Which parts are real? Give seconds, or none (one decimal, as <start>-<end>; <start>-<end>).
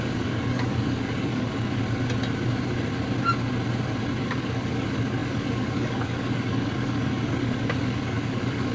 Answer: 1.8-4.2